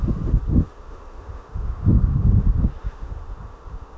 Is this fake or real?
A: fake